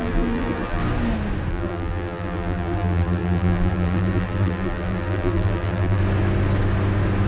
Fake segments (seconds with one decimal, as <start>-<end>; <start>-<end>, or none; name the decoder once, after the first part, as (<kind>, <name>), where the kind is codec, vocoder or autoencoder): 0.0-0.8 (vocoder, BigVGAN v2); 1.5-6.0